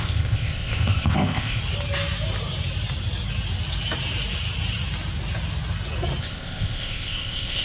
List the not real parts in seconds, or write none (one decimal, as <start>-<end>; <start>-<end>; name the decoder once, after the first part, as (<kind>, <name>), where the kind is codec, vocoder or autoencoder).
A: 0.0-1.6 (codec, ZipCodec); 6.2-7.6